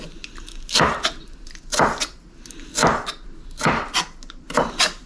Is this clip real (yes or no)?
yes